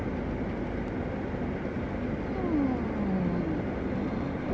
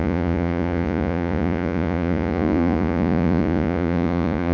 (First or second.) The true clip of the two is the first